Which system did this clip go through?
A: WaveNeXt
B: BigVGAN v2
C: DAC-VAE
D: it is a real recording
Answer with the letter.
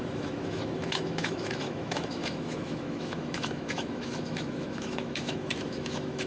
C